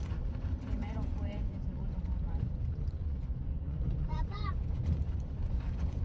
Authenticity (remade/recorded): remade